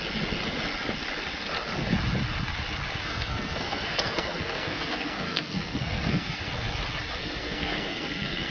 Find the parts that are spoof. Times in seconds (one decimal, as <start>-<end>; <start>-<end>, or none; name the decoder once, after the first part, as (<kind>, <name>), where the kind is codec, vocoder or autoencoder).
3.0-6.5 (codec, SNAC); 7.2-8.5